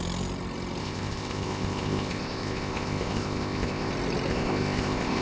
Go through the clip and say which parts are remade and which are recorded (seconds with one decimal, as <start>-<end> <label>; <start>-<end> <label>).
0.0-0.8 recorded; 0.8-3.9 remade; 3.9-4.3 recorded; 4.3-5.2 remade